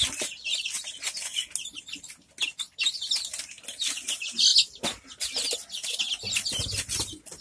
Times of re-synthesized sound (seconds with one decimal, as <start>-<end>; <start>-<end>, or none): none